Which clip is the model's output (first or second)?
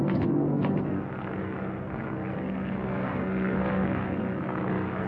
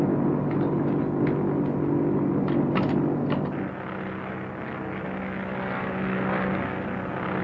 first